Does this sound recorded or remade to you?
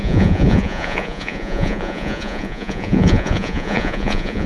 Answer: remade